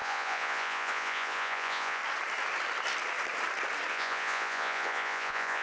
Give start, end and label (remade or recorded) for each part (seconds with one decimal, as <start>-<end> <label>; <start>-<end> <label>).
0.0-2.0 remade; 2.0-3.9 recorded; 3.9-5.6 remade